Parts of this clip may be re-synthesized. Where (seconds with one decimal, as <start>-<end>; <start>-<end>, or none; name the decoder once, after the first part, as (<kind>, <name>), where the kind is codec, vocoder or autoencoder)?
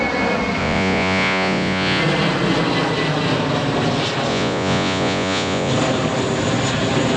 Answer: 0.6-2.0 (vocoder, Vocos); 4.3-5.7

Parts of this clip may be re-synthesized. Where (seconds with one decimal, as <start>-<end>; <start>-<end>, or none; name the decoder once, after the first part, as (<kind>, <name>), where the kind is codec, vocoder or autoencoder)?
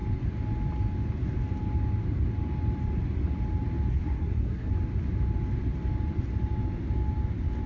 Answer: 3.9-4.7 (codec, SNAC)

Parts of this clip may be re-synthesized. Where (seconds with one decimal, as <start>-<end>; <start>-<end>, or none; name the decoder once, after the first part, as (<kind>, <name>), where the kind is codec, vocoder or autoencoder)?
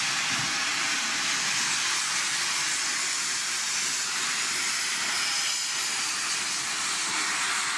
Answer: none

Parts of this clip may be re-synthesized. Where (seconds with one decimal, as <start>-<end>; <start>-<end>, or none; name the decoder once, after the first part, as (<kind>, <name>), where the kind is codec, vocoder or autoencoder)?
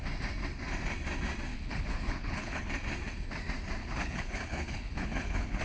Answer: 1.5-2.7 (codec, HILCodec); 3.8-5.6